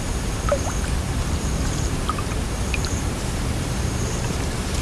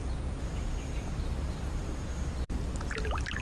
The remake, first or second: first